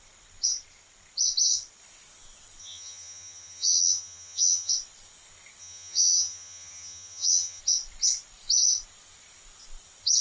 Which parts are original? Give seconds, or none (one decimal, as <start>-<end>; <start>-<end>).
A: 0.0-2.6; 4.7-5.6; 7.6-10.2